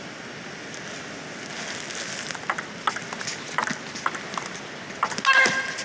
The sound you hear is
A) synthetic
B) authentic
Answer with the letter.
B